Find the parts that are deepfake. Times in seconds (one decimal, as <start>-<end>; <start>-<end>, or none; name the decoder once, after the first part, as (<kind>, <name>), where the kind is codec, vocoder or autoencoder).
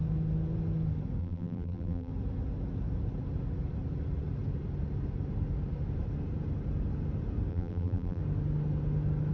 1.2-2.1 (vocoder, BigVGAN v2); 7.5-8.2